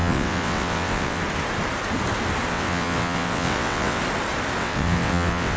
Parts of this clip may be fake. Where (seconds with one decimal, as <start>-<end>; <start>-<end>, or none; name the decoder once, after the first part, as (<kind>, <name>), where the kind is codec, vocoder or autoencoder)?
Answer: 0.0-1.2 (vocoder, WaveNeXt); 2.5-4.0; 4.6-5.6